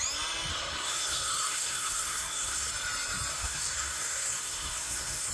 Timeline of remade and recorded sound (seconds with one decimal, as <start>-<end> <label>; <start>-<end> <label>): 0.0-0.5 recorded; 0.5-2.7 remade; 2.7-3.3 recorded; 3.3-5.3 remade